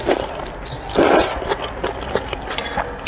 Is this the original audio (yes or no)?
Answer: yes